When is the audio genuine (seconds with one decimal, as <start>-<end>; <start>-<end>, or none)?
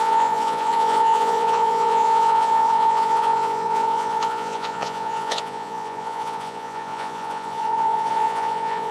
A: none